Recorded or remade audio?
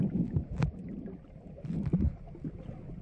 recorded